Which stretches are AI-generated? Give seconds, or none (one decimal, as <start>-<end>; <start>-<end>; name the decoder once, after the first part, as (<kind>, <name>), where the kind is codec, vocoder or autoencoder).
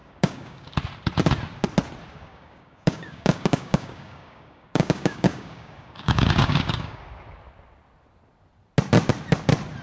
0.0-0.7 (codec, DAC); 2.1-7.0